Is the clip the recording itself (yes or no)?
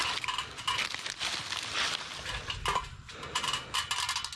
yes